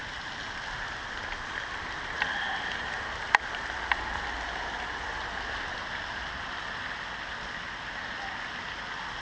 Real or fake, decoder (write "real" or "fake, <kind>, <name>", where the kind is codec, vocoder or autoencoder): real